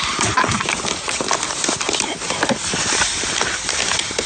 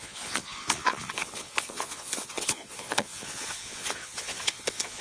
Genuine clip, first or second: first